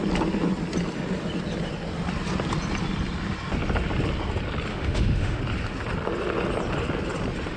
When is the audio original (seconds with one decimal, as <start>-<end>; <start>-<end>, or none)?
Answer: 0.0-4.7; 5.4-7.6